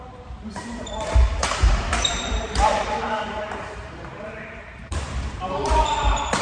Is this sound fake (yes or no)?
yes